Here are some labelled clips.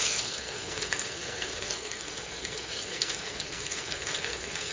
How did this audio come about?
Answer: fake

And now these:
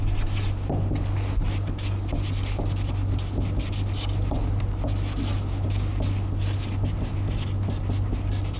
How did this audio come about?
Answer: real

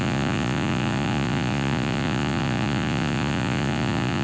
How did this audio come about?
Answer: fake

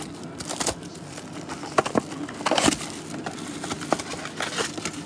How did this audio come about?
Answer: real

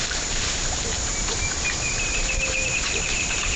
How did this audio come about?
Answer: fake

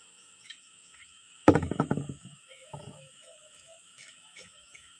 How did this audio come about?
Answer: fake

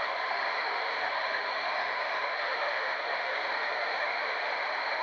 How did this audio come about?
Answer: fake